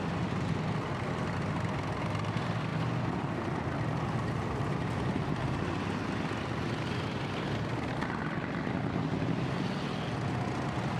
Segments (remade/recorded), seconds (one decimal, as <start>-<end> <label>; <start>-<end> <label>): 0.0-11.0 recorded